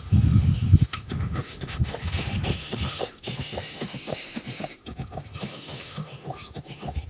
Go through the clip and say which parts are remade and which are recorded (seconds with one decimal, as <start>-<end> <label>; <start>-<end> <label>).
0.0-7.1 remade